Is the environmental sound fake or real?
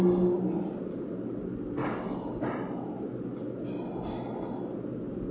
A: real